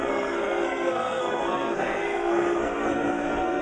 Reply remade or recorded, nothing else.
remade